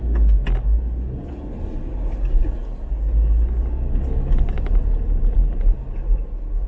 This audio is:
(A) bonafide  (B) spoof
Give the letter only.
A